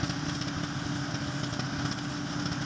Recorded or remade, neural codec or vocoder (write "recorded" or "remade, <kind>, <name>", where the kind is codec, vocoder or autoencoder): recorded